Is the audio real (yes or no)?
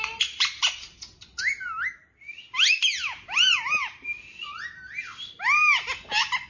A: yes